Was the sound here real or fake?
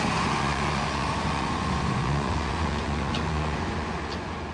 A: fake